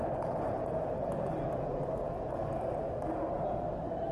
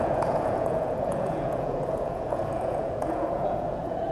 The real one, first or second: first